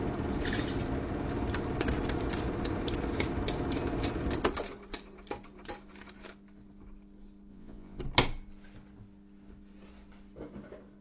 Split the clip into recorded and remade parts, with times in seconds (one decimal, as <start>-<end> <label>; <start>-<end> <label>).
0.0-7.5 recorded; 7.5-8.0 remade; 8.0-11.0 recorded

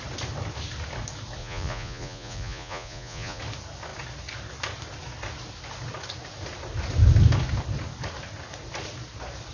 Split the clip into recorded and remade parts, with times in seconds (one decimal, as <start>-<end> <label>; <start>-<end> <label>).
0.0-1.4 recorded; 1.4-3.4 remade; 3.4-9.5 recorded

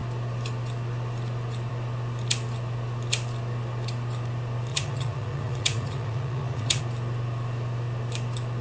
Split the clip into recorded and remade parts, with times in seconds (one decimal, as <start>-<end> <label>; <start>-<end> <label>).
0.0-4.7 recorded; 4.7-6.8 remade; 6.8-8.6 recorded

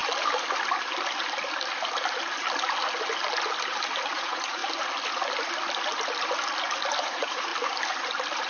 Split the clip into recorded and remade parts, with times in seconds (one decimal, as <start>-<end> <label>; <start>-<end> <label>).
0.0-4.1 recorded; 4.1-4.6 remade; 4.6-7.0 recorded; 7.0-7.5 remade; 7.5-8.5 recorded

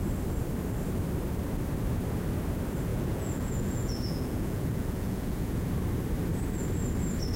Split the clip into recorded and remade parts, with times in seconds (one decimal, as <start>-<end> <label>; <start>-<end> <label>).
0.0-2.9 recorded; 2.9-5.7 remade; 5.7-7.4 recorded

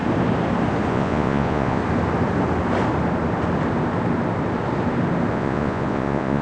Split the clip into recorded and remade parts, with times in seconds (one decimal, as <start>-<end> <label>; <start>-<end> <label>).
0.0-0.9 recorded; 0.9-1.8 remade; 1.8-5.3 recorded; 5.3-6.4 remade